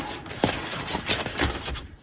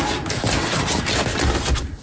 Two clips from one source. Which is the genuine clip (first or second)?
second